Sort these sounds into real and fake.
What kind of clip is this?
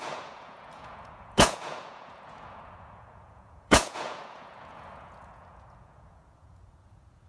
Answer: fake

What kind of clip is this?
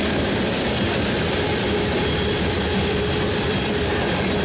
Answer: real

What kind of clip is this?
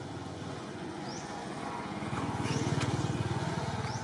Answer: fake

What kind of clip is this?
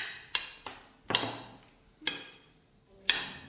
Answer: real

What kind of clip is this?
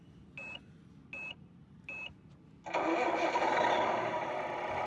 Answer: real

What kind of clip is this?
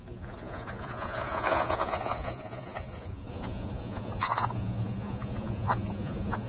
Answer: fake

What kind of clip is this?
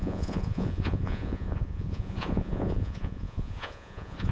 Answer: fake